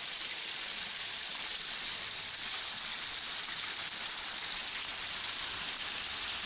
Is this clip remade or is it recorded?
recorded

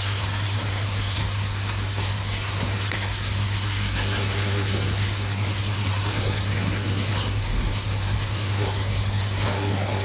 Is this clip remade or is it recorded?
remade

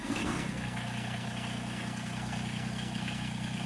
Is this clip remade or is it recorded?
remade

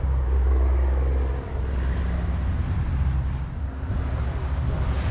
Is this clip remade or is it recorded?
recorded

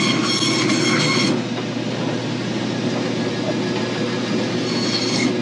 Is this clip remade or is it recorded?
recorded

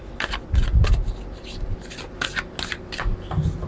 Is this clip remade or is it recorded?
recorded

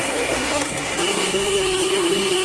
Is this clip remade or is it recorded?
remade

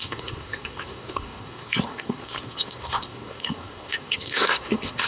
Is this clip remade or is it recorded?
remade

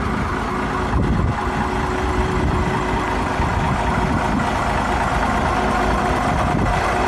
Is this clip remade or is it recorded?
recorded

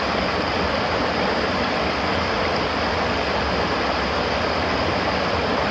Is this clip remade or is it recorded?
recorded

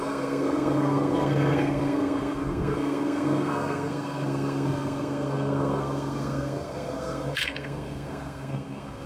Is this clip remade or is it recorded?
remade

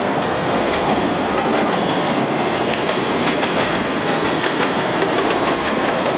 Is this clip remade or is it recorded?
remade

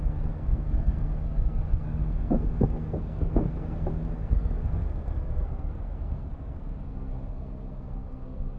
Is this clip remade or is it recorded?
remade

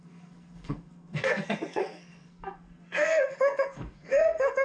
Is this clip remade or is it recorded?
remade